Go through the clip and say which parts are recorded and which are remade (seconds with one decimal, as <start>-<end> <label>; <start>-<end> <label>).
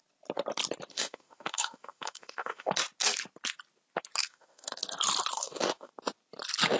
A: 0.0-0.9 recorded; 0.9-2.7 remade; 2.7-4.2 recorded; 4.2-4.8 remade; 4.8-5.3 recorded; 5.3-5.9 remade; 5.9-6.8 recorded